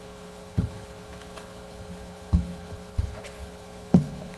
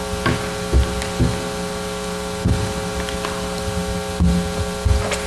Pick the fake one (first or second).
first